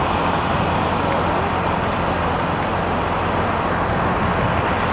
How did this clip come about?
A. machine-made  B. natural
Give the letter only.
B